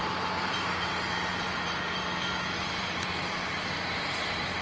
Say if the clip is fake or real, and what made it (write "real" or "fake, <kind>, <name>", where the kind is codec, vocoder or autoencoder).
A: fake, vocoder, BigVGAN v2